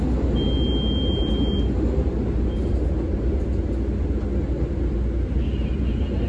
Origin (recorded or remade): recorded